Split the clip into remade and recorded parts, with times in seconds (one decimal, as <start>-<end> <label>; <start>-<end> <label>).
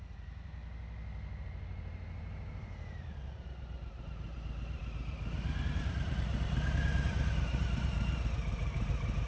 0.0-0.6 remade; 0.6-1.4 recorded; 1.4-9.3 remade